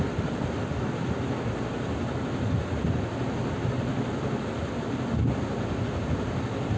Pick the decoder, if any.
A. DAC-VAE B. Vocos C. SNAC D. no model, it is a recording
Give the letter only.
D